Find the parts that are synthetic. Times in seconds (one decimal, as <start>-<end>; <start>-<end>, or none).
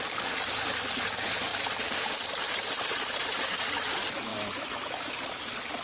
4.3-5.1